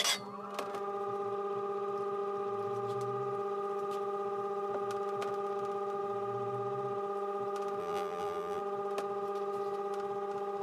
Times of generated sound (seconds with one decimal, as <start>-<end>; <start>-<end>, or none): 7.8-8.6